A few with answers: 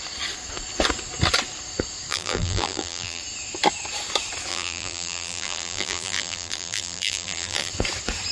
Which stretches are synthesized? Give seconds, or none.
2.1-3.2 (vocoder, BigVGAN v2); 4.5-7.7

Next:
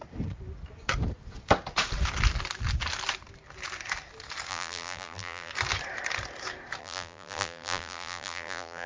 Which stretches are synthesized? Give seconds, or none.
4.5-5.5 (vocoder, BigVGAN v2); 6.8-8.9